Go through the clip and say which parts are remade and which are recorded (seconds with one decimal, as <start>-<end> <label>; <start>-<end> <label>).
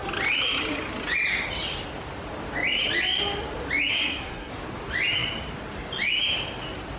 0.0-3.9 recorded; 3.9-4.5 remade; 4.5-7.0 recorded